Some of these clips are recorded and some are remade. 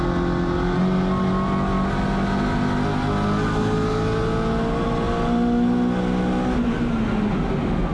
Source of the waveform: recorded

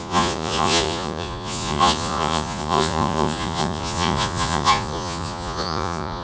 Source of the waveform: remade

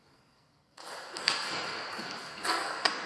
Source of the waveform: remade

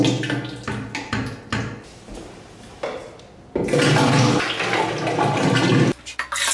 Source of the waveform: recorded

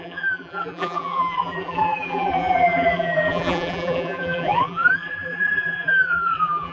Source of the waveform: remade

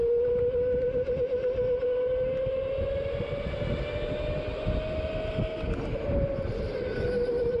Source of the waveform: recorded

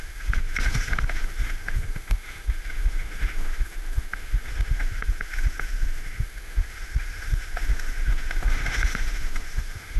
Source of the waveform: remade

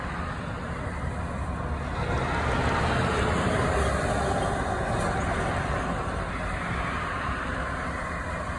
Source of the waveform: recorded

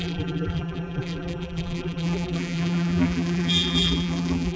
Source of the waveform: remade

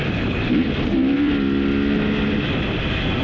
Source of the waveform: recorded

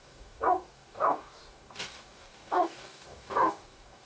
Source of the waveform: remade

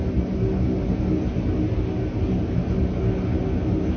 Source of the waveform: recorded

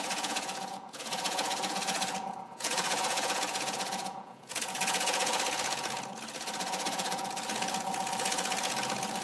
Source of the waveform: remade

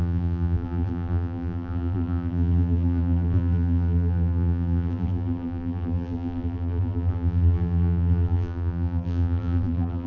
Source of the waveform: remade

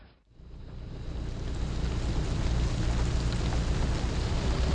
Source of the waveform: recorded